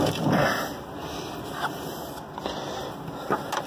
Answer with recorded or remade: recorded